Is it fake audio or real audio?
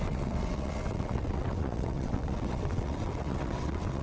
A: fake